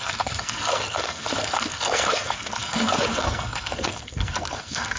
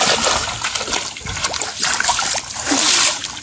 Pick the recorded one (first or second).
second